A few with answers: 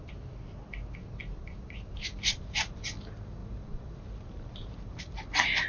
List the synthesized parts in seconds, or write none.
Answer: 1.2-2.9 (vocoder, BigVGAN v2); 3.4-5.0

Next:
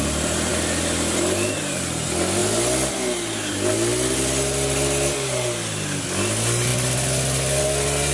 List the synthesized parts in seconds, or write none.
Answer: none